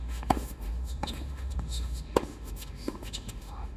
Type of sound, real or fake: fake